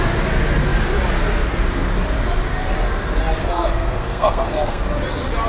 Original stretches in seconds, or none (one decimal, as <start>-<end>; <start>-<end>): 0.0-3.4; 4.8-5.5